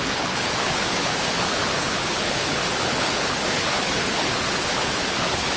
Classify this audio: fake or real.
fake